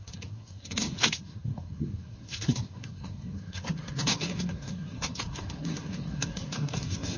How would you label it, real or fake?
fake